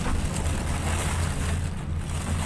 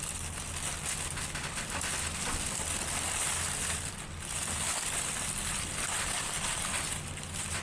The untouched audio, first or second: first